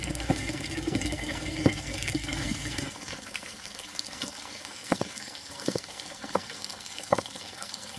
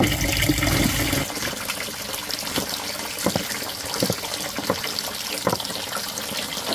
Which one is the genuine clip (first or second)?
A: second